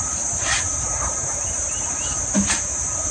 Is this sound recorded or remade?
remade